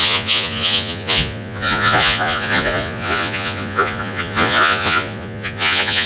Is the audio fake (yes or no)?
yes